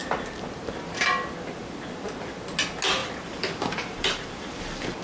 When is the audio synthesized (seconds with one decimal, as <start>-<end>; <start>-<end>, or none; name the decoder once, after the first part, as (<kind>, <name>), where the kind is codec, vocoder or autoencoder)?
3.0-5.0 (vocoder, BigVGAN v2)